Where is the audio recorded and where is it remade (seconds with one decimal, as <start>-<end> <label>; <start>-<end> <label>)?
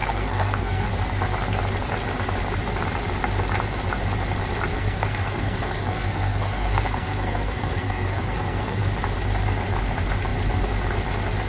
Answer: 0.0-0.9 remade; 0.9-4.7 recorded; 4.7-8.8 remade; 8.8-11.5 recorded